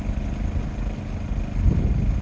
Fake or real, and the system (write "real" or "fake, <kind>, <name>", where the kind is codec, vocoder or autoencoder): real